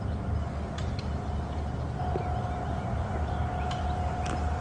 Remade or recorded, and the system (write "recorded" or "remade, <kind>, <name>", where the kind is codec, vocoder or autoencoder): recorded